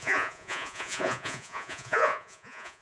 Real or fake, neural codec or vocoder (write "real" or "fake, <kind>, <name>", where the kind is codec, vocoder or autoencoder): fake, vocoder, Vocos